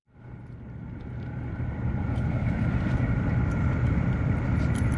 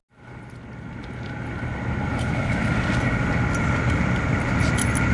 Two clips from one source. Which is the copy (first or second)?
first